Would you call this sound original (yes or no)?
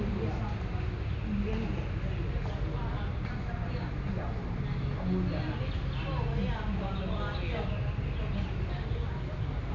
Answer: yes